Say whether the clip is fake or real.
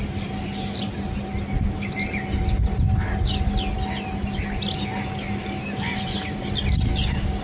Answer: real